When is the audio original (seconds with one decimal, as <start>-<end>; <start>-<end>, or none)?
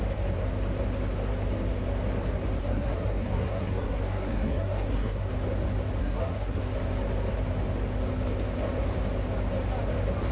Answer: 0.0-2.6; 5.3-6.0; 6.6-10.3